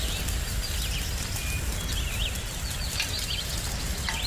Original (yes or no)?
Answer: yes